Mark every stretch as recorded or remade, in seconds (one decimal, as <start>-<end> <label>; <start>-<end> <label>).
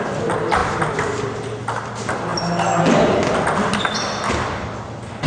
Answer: 0.0-5.3 recorded